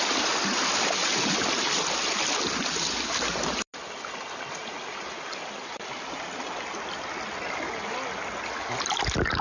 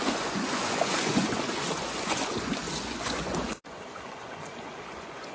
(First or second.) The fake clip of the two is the second